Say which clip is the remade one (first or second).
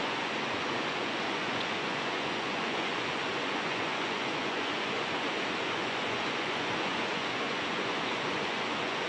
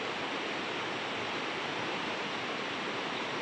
first